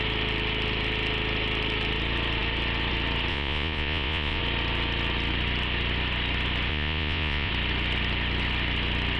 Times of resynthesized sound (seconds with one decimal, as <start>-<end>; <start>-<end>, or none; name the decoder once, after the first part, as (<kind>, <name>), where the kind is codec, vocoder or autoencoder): 3.3-4.4 (vocoder, Vocos); 6.7-7.5